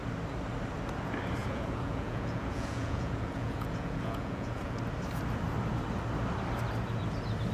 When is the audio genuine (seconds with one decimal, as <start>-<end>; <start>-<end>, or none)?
0.0-1.4; 4.8-7.5